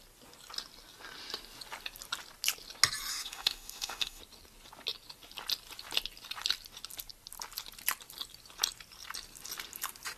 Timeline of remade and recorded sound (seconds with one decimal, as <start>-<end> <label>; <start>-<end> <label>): 0.0-3.1 recorded; 3.1-4.2 remade; 4.2-10.2 recorded